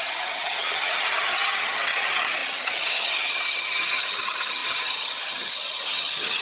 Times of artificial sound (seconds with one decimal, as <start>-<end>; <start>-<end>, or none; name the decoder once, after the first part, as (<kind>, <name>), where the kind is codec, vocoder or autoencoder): 0.0-6.4 (vocoder, HiFi-GAN)